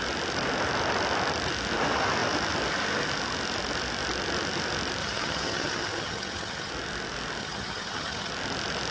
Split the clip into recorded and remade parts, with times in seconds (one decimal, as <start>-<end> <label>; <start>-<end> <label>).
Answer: 0.0-5.0 recorded; 5.0-6.7 remade; 6.7-7.4 recorded; 7.4-8.3 remade; 8.3-8.9 recorded